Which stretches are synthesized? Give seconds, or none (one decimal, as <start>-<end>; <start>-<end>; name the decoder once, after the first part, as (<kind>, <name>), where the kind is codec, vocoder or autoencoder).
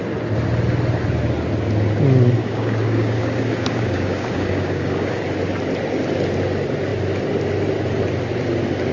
2.4-5.2 (codec, DAC)